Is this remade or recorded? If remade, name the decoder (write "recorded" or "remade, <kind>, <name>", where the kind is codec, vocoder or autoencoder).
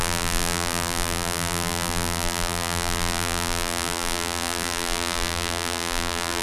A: remade, vocoder, BigVGAN v2